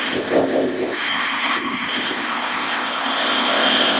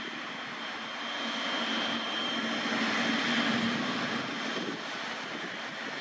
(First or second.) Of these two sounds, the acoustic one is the second